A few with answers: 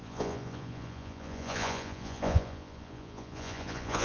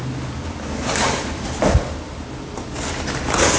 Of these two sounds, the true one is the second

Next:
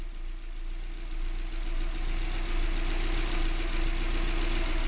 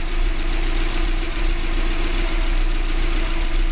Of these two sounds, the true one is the first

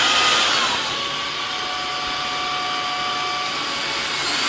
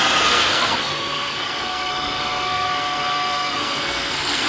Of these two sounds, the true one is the first